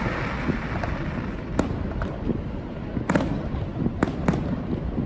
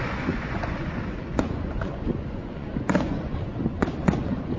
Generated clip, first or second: second